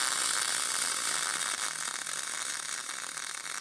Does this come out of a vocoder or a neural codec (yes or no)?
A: no